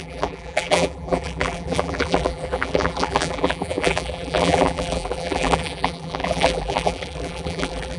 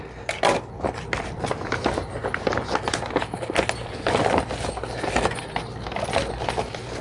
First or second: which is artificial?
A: first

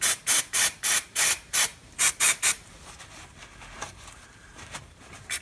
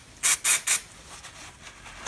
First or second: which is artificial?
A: first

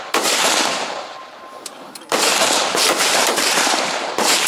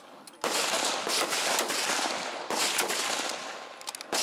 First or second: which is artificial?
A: first